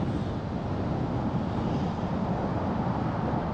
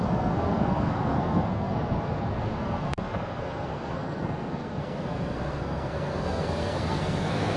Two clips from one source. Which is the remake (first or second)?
second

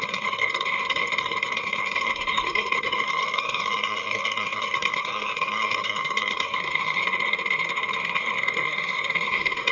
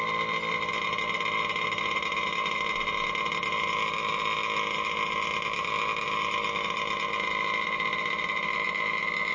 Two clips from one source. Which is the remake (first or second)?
first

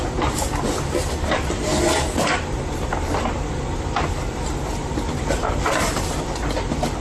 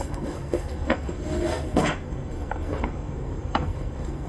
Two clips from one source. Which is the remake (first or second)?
second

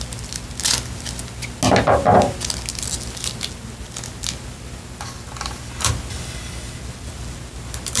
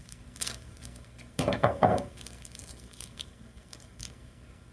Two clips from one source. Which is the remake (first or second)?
second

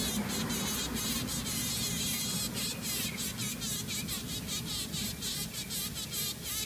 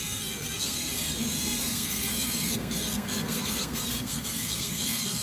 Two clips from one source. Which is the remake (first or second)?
second